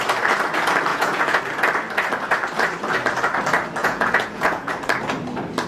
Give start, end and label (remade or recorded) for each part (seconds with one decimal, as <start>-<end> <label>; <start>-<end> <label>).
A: 0.0-0.9 recorded; 0.9-1.4 remade; 1.4-3.8 recorded; 3.8-4.7 remade; 4.7-5.7 recorded